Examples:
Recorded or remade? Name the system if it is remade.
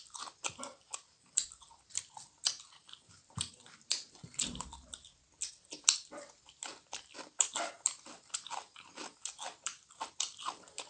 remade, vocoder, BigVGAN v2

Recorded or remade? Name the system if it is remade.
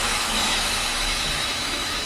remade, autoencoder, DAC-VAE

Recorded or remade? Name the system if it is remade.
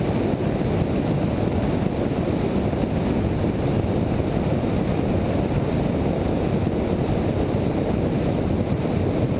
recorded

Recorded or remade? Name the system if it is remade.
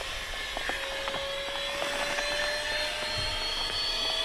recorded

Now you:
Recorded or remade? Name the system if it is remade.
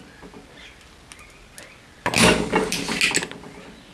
recorded